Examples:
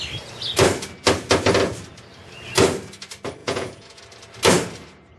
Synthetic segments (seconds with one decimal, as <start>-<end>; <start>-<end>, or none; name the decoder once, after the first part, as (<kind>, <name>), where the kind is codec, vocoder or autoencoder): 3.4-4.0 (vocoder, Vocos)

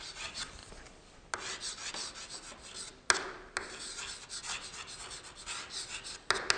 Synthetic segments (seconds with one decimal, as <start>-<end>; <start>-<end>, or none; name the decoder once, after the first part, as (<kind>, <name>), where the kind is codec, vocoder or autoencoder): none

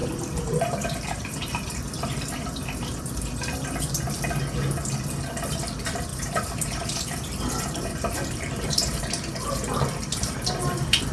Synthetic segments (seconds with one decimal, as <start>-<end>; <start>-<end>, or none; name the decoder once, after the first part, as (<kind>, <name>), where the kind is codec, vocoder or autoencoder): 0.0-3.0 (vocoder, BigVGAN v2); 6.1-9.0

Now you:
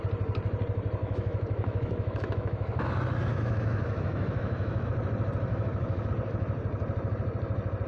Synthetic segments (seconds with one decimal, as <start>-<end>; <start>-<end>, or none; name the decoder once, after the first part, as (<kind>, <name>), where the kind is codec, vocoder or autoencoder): 1.0-2.9 (autoencoder, DAC-VAE); 3.3-4.9; 5.5-6.1